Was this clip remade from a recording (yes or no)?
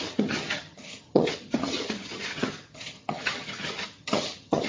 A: yes